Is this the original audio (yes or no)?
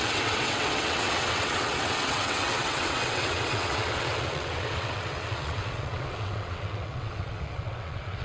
no